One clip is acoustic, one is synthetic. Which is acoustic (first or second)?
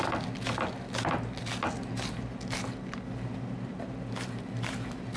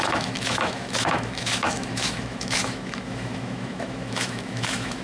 first